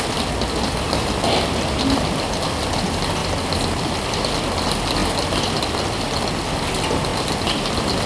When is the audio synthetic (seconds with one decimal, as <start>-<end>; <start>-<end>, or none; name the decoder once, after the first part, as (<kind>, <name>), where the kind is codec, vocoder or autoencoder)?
none